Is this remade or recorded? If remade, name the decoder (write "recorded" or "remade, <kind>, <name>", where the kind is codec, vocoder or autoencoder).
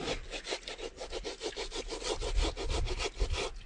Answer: recorded